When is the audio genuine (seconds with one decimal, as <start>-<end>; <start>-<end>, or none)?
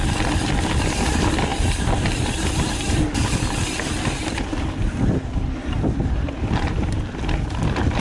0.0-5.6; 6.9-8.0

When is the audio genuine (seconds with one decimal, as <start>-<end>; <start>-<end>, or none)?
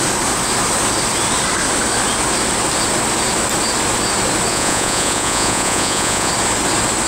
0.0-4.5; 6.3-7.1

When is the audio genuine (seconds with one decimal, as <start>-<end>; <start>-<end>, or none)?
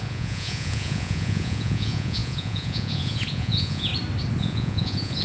3.9-4.4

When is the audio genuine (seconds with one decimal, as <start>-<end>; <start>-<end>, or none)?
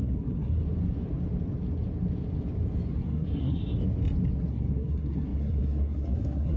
0.6-2.9; 3.6-4.5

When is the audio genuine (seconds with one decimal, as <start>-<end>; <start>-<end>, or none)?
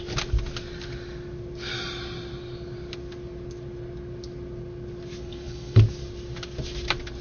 0.0-5.2; 5.8-7.2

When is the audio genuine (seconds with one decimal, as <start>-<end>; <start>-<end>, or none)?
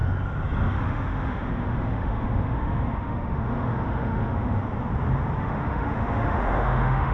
0.0-0.8; 4.6-5.4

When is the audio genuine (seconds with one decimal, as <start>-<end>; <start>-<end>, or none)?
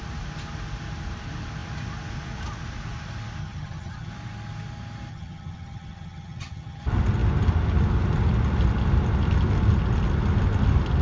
0.0-3.4; 4.1-5.1; 6.8-11.0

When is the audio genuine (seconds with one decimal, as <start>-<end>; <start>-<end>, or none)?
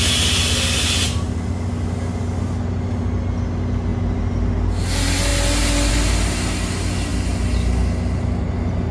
0.0-8.9